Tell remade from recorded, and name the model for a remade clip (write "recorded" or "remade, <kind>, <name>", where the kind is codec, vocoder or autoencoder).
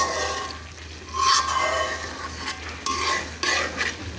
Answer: recorded